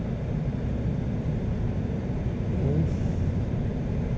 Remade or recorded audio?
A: recorded